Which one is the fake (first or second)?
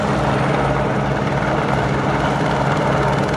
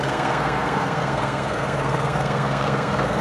second